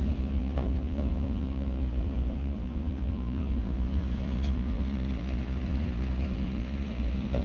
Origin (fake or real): fake